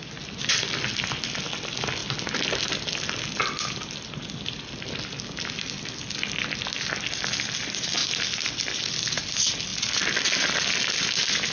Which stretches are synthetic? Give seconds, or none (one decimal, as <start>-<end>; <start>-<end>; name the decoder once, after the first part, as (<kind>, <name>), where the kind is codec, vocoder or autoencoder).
none